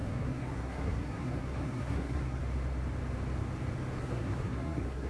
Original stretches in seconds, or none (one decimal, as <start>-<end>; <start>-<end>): 2.4-4.0